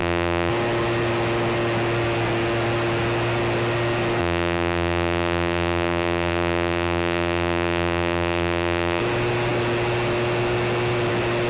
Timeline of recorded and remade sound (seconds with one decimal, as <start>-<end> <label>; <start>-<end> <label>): 0.0-0.5 remade; 0.5-4.2 recorded; 4.2-9.0 remade; 9.0-11.5 recorded